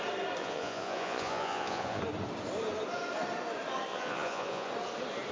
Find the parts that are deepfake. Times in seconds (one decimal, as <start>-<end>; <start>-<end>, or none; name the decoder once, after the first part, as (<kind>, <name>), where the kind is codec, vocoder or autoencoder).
0.4-2.0 (vocoder, Vocos); 3.9-4.7